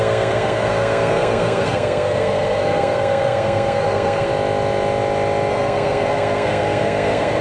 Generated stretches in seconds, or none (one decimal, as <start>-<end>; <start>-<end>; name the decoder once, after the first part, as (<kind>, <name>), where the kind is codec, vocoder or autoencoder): 0.0-4.3 (codec, SNAC); 5.5-7.4